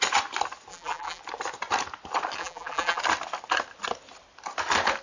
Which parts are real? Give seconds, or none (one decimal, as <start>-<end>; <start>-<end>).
0.0-0.7; 1.2-2.4; 3.0-5.0

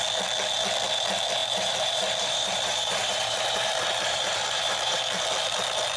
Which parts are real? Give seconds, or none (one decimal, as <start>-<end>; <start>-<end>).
0.0-1.4; 5.0-6.0

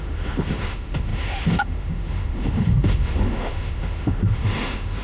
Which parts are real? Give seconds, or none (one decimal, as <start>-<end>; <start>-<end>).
none

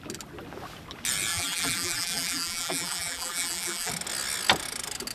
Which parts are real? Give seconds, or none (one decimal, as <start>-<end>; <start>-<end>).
0.0-1.3; 3.9-5.1